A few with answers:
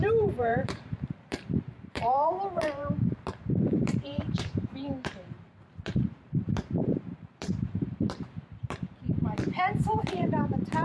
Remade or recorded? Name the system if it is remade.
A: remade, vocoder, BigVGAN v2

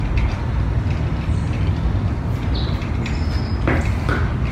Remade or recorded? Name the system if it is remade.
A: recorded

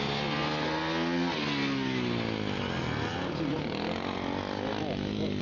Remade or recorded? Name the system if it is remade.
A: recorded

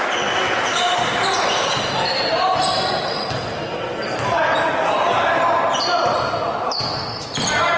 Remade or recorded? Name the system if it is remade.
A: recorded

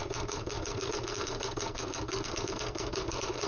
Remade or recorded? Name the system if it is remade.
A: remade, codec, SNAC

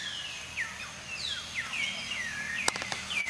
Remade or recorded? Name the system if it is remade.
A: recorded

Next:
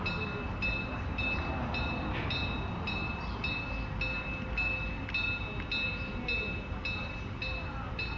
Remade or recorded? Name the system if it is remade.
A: recorded